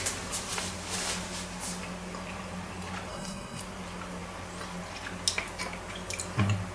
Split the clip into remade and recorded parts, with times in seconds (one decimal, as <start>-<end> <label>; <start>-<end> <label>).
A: 0.0-3.1 recorded; 3.1-3.6 remade; 3.6-6.7 recorded